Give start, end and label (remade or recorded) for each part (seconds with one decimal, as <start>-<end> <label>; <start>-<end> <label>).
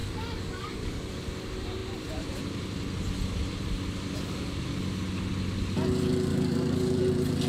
0.0-1.2 remade; 1.2-6.3 recorded; 6.3-7.0 remade; 7.0-7.5 recorded